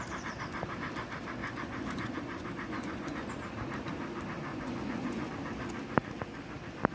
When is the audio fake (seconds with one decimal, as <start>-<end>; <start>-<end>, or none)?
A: 1.4-3.3; 4.5-5.3